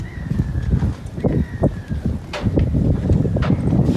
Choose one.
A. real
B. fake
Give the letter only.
A